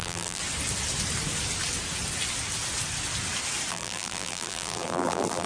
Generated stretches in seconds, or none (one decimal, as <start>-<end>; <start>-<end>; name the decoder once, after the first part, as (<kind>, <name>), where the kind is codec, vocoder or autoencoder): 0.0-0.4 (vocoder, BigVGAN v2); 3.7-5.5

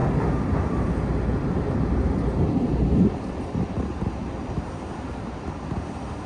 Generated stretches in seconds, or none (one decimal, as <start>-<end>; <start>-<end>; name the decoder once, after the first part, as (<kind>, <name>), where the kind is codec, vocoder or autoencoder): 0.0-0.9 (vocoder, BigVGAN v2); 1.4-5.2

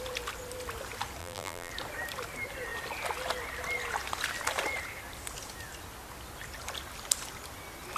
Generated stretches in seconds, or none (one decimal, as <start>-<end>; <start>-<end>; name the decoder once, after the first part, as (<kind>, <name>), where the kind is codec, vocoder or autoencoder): 1.2-1.7 (vocoder, BigVGAN v2)